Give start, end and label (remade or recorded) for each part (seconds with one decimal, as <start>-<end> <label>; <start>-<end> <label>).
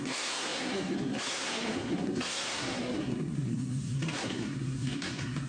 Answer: 0.0-5.5 remade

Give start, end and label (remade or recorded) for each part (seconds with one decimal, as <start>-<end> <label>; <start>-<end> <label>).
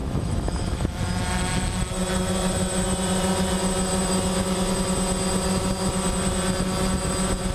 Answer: 0.0-1.0 remade; 1.0-7.5 recorded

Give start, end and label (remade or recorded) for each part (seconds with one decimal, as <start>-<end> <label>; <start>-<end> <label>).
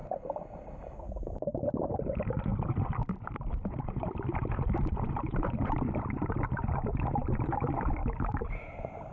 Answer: 0.0-2.5 remade; 2.5-3.8 recorded; 3.8-8.0 remade; 8.0-8.7 recorded; 8.7-9.1 remade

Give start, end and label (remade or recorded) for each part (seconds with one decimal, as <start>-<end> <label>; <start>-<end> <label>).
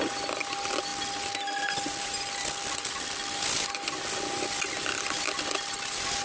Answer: 0.0-6.2 recorded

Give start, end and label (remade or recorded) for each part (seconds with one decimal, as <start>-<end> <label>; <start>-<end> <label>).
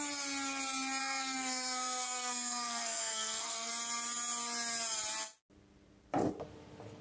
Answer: 0.0-1.0 recorded; 1.0-3.7 remade; 3.7-7.0 recorded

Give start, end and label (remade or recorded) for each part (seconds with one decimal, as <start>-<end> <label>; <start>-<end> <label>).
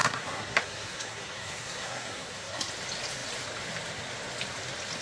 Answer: 0.0-2.7 remade; 2.7-5.0 recorded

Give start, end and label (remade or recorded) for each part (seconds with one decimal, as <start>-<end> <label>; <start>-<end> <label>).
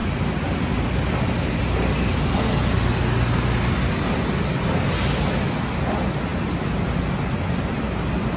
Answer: 0.0-8.4 recorded